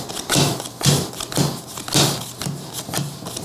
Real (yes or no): yes